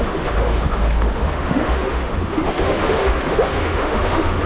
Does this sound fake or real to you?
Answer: fake